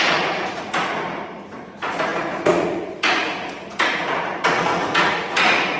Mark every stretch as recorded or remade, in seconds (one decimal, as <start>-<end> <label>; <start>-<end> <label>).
0.0-5.8 remade